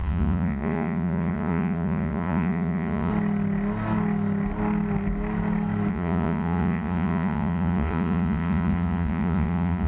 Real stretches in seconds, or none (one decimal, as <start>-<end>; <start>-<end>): 3.1-5.9